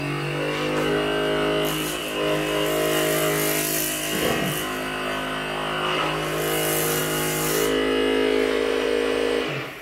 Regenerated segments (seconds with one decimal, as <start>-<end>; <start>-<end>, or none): none